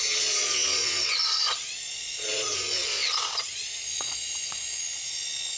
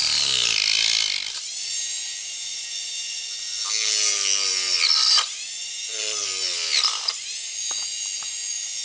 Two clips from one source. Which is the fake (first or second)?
first